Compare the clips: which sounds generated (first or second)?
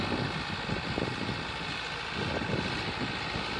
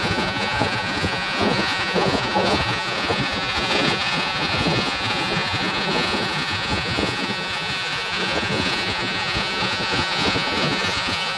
second